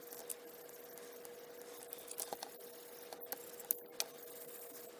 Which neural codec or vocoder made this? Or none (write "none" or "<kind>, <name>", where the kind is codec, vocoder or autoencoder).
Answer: none